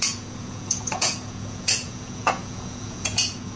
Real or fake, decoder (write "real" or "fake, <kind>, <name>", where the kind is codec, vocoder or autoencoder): fake, vocoder, Vocos